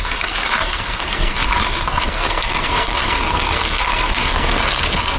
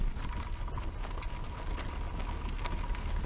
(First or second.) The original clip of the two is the second